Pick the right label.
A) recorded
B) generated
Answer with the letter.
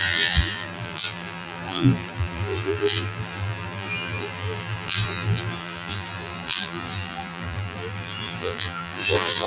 B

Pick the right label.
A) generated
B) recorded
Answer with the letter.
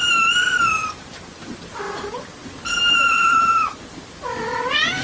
B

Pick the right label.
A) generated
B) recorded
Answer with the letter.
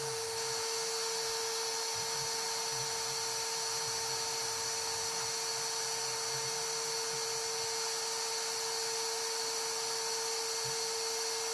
B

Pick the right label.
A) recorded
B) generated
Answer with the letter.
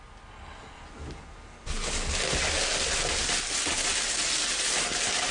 A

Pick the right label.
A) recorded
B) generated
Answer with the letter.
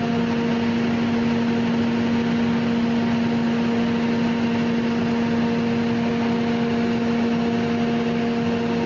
A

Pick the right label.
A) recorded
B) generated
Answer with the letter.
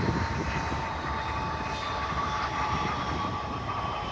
A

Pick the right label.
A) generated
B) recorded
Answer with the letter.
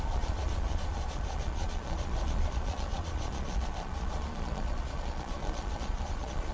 A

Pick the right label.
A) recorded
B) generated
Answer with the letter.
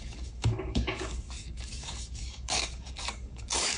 B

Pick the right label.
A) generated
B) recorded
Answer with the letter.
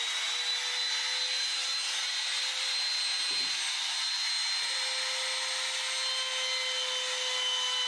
B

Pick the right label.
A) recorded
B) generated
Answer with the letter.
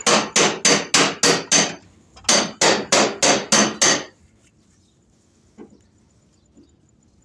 A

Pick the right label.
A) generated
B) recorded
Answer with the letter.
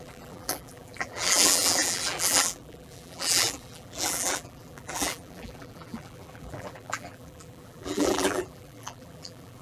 A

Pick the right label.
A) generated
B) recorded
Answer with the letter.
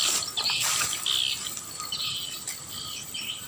B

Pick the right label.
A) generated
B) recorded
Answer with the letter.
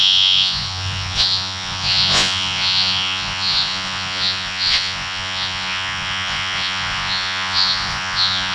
A